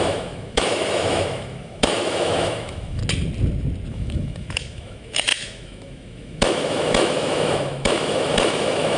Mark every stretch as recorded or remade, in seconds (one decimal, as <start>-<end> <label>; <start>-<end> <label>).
0.0-3.0 remade; 3.0-3.9 recorded; 3.9-9.0 remade